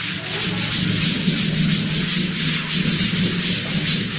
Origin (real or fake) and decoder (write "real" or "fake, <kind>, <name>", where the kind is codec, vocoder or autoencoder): real